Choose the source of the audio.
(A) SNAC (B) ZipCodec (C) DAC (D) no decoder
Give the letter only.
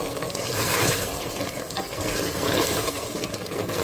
A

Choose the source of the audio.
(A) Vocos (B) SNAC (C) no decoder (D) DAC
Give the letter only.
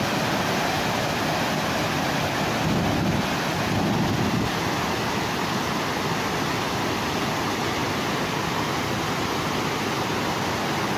C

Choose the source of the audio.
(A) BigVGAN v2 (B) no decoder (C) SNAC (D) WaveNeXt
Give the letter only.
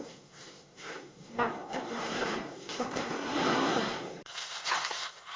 C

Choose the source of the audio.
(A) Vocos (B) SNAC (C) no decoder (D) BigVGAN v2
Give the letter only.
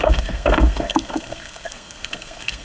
B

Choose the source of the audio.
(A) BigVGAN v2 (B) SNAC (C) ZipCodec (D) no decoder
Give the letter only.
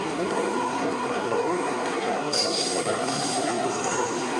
B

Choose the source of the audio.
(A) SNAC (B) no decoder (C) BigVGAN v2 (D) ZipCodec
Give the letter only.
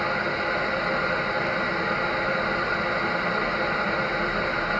B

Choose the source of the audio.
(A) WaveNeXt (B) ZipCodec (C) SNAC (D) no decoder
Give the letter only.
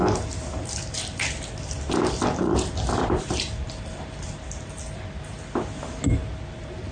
D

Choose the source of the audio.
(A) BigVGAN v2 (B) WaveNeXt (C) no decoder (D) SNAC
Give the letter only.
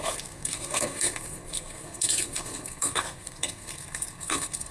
D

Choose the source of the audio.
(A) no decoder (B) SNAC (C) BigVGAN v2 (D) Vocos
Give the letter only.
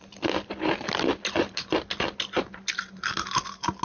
A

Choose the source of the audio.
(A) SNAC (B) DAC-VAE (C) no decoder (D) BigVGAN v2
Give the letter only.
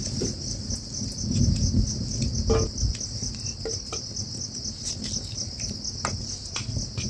C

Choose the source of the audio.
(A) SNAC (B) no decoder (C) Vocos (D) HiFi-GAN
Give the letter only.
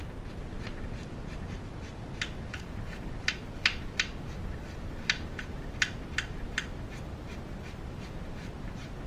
B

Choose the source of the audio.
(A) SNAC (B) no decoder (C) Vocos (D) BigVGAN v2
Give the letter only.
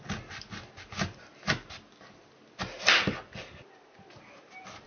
B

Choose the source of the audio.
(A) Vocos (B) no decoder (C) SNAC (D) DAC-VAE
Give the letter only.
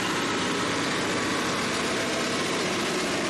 B